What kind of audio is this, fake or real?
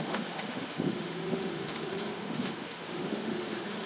fake